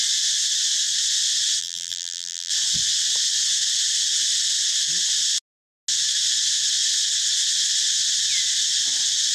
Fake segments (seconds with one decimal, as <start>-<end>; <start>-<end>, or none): 1.6-2.5